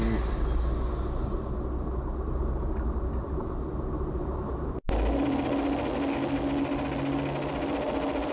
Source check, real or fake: real